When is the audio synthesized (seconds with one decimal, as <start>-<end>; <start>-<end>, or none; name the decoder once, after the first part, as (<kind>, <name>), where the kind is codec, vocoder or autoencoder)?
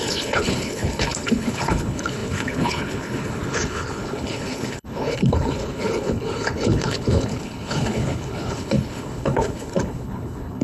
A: 0.0-10.6 (codec, HILCodec)